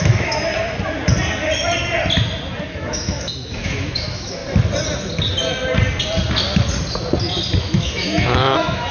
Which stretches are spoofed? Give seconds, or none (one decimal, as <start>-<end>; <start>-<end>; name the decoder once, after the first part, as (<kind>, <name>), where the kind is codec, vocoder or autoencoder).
0.0-0.5 (autoencoder, DAC-VAE); 2.7-4.4; 7.6-8.9